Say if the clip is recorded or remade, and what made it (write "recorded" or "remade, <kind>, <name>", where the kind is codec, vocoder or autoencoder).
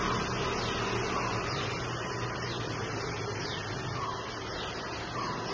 recorded